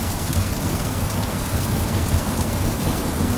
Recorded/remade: remade